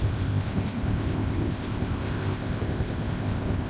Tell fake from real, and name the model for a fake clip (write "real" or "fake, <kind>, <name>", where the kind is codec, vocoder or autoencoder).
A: fake, codec, ZipCodec